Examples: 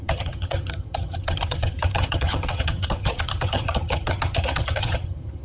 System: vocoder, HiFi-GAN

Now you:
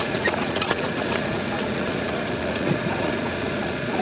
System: vocoder, Vocos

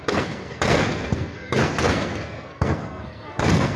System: codec, SNAC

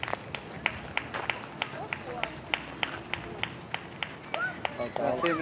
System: none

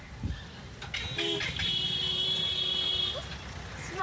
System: none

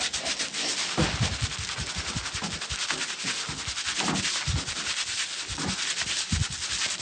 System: none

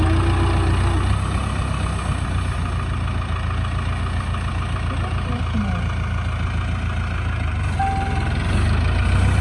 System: none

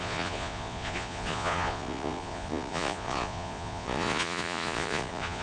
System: vocoder, Vocos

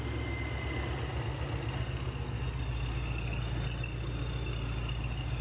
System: none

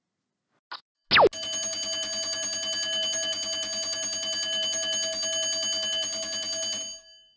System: none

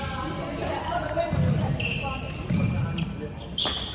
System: none